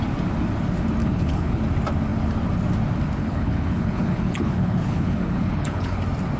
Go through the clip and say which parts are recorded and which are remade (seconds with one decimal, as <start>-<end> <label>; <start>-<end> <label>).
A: 0.0-1.0 recorded; 1.0-1.6 remade; 1.6-3.2 recorded; 3.2-6.0 remade; 6.0-6.4 recorded